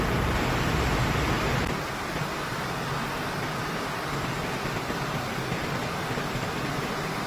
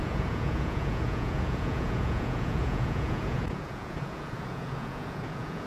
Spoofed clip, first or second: second